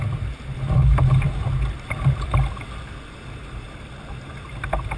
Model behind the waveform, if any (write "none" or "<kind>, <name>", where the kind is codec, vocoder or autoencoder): none